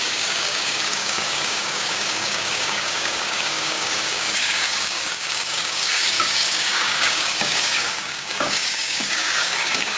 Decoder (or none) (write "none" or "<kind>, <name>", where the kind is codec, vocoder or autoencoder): codec, DAC